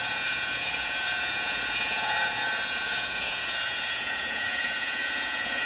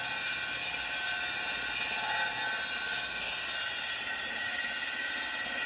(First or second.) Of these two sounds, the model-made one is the first